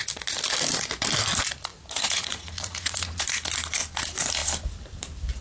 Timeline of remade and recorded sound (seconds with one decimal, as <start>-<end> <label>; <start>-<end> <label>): 0.0-1.7 recorded; 1.7-3.2 remade; 3.2-5.4 recorded